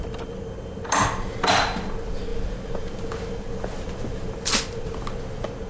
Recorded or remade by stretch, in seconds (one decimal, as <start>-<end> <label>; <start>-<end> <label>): 0.0-5.7 recorded